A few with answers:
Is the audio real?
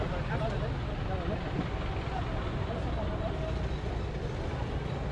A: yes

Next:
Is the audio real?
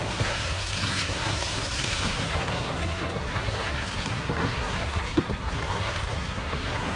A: no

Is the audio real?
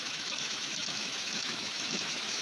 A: no